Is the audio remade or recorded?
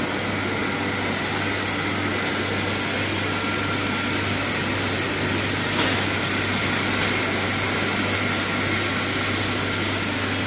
recorded